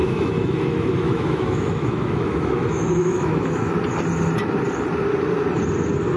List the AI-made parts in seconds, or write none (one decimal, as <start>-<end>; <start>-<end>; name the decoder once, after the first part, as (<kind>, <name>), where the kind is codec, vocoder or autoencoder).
0.0-3.7 (autoencoder, DAC-VAE)